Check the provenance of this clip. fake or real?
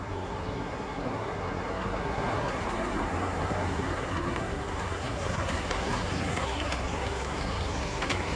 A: fake